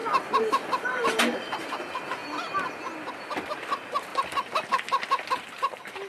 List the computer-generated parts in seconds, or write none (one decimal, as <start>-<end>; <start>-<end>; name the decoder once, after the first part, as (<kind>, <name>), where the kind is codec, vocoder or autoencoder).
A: none